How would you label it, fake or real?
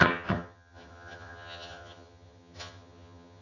fake